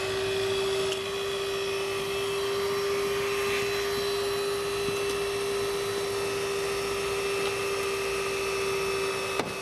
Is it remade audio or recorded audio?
recorded